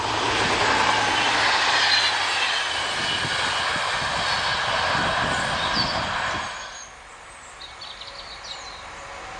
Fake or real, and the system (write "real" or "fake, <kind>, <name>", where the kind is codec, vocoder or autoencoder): real